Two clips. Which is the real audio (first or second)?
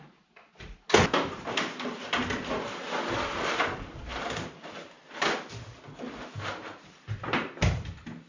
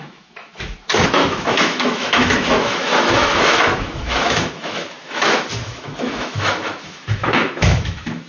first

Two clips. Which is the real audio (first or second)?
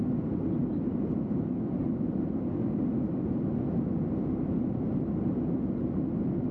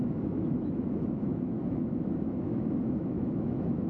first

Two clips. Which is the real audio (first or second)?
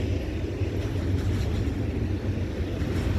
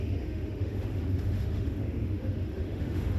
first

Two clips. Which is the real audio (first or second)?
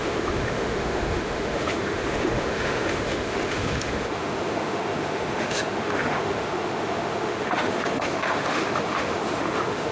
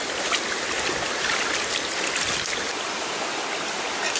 second